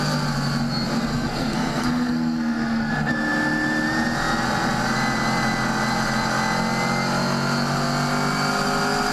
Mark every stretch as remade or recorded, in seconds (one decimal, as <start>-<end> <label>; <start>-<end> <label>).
0.0-1.1 recorded; 1.1-2.9 remade; 2.9-9.1 recorded